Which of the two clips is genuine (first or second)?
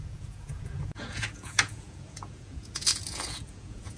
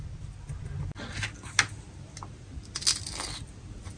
second